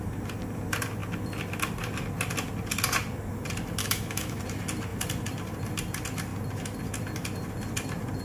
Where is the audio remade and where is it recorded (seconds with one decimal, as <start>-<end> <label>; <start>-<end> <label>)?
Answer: 0.0-3.8 recorded; 3.8-4.4 remade; 4.4-8.2 recorded